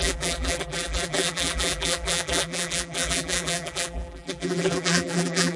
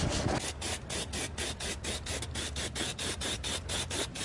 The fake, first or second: first